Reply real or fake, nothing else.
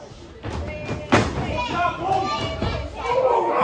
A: real